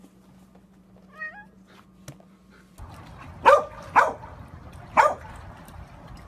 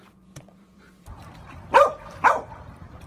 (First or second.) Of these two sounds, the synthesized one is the second